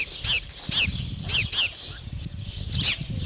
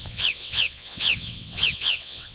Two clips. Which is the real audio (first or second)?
first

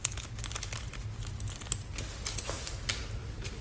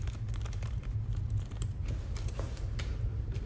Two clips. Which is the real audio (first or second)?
first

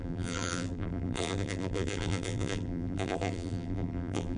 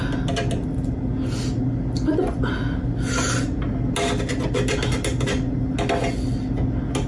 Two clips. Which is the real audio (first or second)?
second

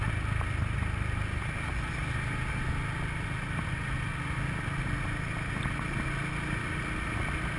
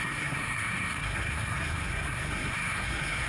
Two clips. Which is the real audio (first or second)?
first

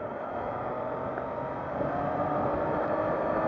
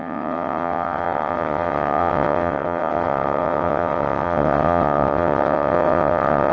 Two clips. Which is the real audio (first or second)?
first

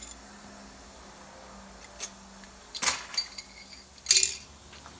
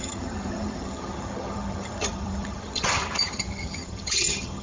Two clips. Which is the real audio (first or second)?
first